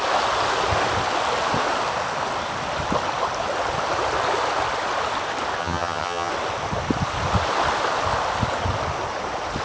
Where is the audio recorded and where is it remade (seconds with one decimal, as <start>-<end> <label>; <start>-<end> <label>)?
0.0-5.6 recorded; 5.6-6.3 remade; 6.3-9.6 recorded